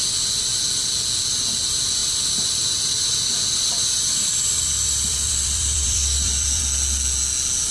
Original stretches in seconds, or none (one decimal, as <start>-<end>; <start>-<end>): 0.0-2.0; 6.6-7.7